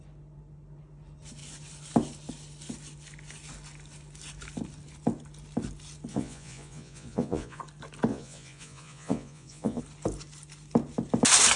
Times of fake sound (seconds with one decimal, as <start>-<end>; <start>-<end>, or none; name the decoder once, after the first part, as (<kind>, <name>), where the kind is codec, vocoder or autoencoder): 6.1-7.6 (vocoder, Vocos); 8.1-9.8